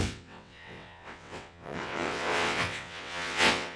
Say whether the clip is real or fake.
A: fake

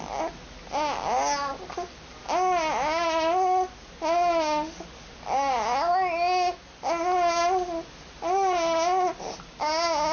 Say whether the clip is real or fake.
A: real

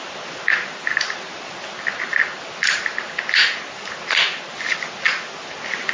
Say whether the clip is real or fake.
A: real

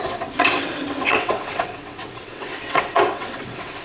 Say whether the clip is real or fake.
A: fake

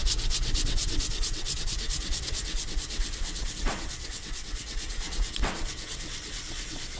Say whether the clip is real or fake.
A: fake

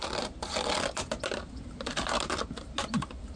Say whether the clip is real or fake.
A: real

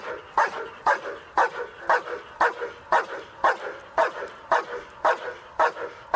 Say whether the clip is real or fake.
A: real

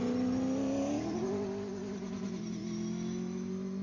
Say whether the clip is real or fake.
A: real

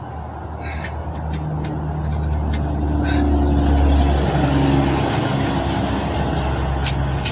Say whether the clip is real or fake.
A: real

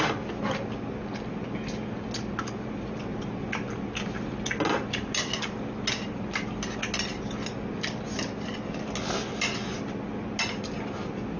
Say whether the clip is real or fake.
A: real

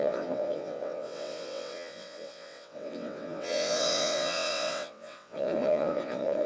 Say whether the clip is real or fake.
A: fake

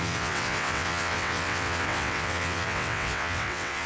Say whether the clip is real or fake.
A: fake